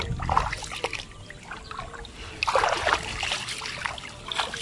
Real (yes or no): yes